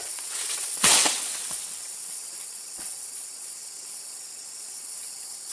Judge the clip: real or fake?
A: fake